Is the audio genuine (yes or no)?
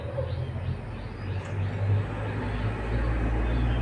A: yes